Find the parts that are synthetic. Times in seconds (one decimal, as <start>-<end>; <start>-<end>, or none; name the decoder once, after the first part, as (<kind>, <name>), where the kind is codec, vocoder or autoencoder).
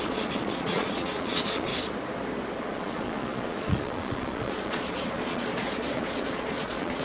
0.0-1.7 (vocoder, Vocos); 2.6-7.0